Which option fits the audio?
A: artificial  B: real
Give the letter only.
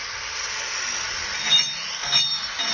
B